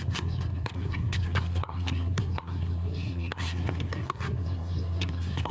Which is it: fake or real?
fake